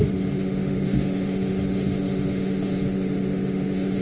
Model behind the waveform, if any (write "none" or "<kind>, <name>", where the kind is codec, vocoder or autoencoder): autoencoder, DAC-VAE